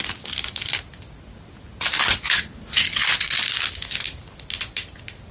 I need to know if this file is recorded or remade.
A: recorded